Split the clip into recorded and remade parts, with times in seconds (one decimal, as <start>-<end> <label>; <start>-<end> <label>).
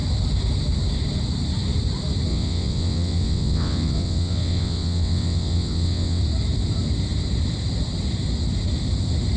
0.0-2.3 recorded; 2.3-6.2 remade; 6.2-9.4 recorded